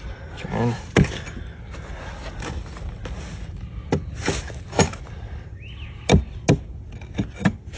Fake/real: real